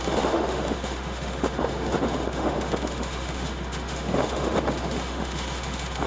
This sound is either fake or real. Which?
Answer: fake